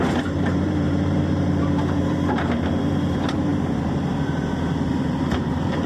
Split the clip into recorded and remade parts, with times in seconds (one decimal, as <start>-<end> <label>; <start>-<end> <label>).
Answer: 0.0-5.9 remade